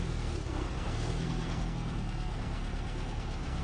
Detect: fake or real fake